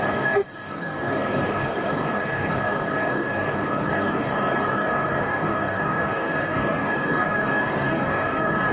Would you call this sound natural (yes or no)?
no